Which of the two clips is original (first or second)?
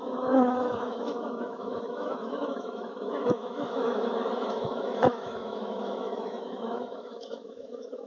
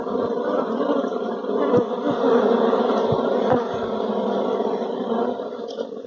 second